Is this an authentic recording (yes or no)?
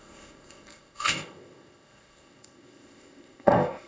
no